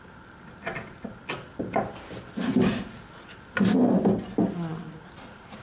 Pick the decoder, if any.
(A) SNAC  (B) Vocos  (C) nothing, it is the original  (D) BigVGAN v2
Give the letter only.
C